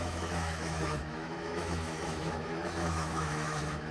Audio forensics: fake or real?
fake